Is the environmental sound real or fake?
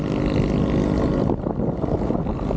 real